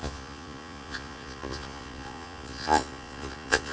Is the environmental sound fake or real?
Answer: fake